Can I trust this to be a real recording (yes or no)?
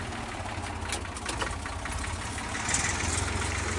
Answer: yes